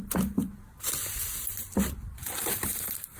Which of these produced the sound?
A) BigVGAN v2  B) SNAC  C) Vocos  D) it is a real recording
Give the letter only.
A